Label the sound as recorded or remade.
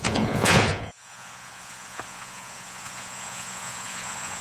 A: remade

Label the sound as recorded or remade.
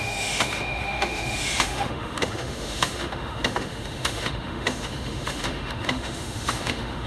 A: remade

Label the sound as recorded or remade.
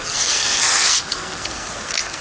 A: remade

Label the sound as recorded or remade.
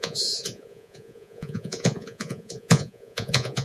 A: remade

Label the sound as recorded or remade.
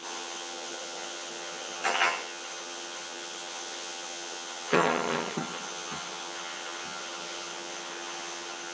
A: remade